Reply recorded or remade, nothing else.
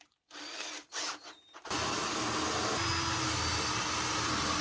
recorded